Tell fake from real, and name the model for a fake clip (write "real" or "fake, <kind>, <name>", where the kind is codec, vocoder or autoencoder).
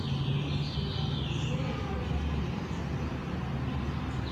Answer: real